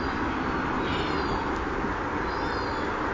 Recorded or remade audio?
recorded